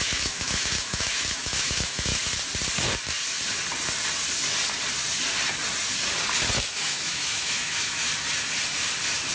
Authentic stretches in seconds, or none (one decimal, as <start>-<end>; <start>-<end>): 2.1-6.7; 8.1-9.3